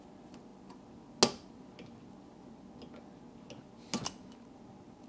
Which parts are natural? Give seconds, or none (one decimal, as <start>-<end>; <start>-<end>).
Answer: 0.0-5.1